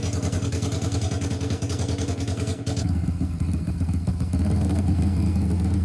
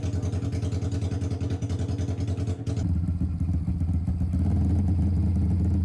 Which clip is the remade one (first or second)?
first